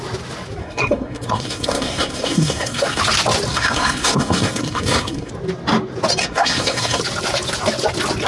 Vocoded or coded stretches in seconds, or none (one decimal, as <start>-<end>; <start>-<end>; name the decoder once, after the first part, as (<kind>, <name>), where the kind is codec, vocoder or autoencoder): 0.6-3.0 (codec, SNAC); 3.5-5.3; 6.2-7.0